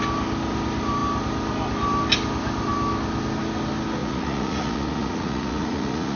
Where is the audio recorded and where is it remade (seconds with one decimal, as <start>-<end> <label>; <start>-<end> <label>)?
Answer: 0.0-4.0 recorded; 4.0-6.2 remade